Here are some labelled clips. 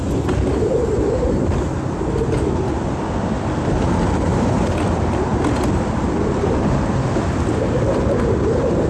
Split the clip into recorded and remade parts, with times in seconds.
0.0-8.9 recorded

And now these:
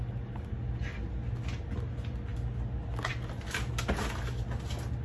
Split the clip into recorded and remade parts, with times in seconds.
0.0-5.0 recorded